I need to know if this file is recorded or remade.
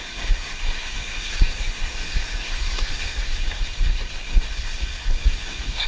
remade